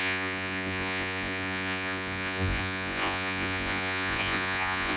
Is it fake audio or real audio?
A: fake